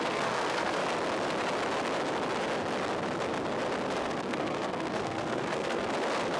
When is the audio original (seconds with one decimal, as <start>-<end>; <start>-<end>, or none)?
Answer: 0.8-4.0; 5.8-6.4